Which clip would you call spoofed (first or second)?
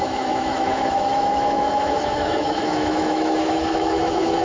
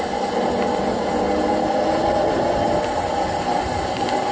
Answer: first